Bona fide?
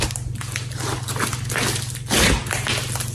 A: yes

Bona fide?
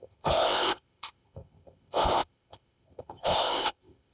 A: no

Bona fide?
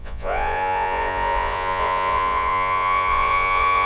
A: no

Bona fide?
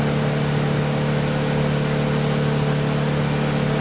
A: yes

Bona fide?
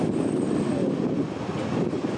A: yes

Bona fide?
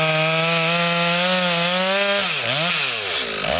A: yes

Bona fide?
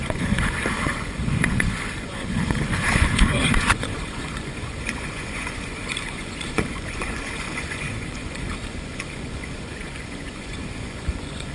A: no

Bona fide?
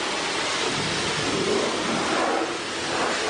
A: yes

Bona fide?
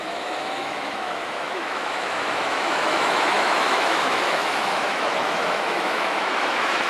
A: no